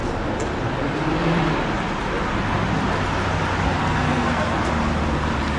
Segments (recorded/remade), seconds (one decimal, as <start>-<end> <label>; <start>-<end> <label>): 0.0-3.8 recorded; 3.8-4.7 remade; 4.7-5.6 recorded